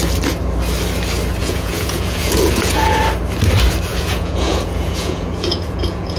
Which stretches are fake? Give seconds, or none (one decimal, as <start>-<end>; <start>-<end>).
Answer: 1.4-3.0; 3.9-6.2